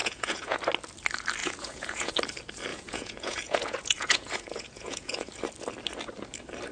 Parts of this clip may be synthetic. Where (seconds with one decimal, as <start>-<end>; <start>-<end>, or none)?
0.0-0.6; 1.4-2.1; 2.7-5.3